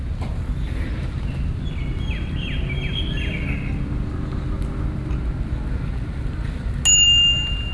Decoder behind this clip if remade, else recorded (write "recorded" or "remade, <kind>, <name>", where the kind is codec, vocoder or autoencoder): recorded